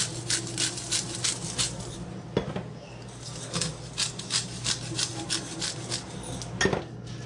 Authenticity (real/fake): real